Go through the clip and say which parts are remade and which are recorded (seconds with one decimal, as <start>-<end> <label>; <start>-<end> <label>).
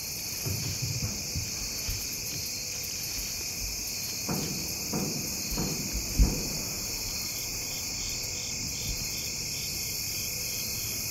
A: 0.0-7.5 recorded; 7.5-8.1 remade; 8.1-8.7 recorded; 8.7-9.9 remade; 9.9-11.1 recorded